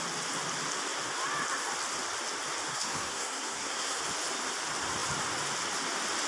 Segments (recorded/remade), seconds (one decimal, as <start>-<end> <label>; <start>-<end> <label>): 0.0-2.7 recorded; 2.7-4.0 remade; 4.0-6.3 recorded